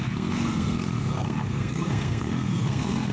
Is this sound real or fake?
fake